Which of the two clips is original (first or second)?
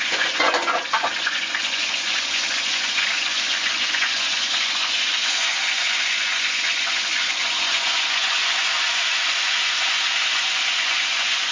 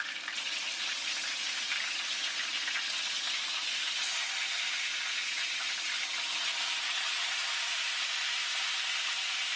second